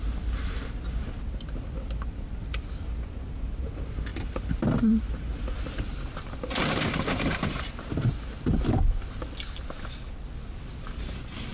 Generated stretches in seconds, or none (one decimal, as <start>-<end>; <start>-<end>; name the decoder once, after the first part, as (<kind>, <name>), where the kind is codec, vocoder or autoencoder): none